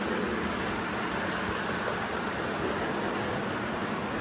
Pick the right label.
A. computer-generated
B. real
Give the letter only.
B